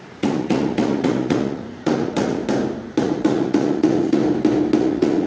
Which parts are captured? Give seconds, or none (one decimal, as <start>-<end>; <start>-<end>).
2.4-3.0; 4.2-4.8